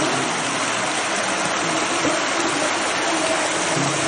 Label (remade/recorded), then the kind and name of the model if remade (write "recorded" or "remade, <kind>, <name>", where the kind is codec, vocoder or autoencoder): recorded